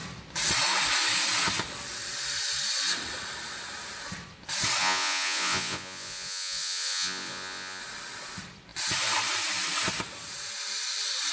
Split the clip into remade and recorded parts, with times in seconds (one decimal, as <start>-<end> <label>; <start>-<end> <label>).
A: 0.0-4.8 recorded; 4.8-7.8 remade; 7.8-11.3 recorded